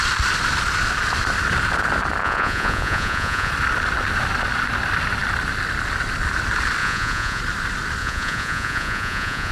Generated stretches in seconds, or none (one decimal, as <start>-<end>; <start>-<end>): 2.2-3.5; 6.8-7.4; 8.0-9.5